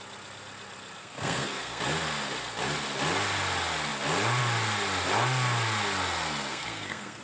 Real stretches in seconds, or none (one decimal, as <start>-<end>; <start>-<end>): 0.0-1.0; 1.8-6.5